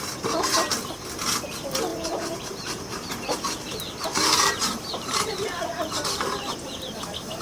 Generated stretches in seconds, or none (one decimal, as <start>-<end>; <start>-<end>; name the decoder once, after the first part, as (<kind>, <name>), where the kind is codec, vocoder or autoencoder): 1.9-3.1 (vocoder, BigVGAN v2); 4.1-6.7